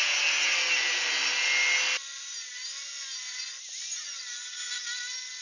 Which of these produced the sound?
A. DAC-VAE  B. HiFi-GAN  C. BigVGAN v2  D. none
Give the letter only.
D